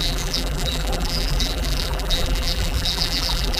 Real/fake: fake